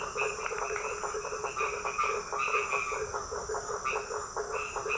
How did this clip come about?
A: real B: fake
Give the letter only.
A